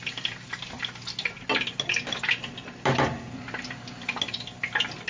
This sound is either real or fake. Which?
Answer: real